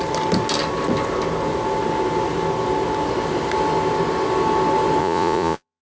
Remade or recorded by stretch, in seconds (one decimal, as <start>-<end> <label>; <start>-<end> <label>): 0.0-5.0 recorded; 5.0-5.8 remade